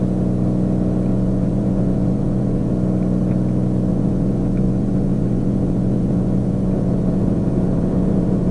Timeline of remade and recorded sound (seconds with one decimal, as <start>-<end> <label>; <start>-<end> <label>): 0.0-1.1 recorded; 1.1-2.7 remade; 2.7-3.9 recorded; 3.9-8.5 remade